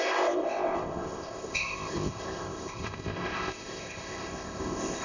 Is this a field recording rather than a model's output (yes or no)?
no